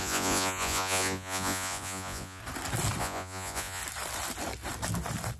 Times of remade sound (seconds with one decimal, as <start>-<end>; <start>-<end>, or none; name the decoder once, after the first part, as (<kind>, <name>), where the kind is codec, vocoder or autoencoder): 0.0-2.4 (vocoder, Vocos); 3.0-3.8